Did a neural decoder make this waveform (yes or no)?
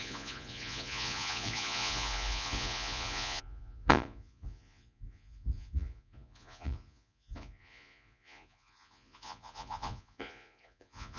yes